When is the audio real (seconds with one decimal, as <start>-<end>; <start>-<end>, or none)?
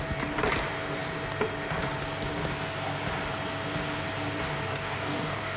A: 0.0-4.7